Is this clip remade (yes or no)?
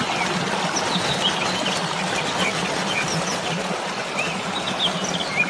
no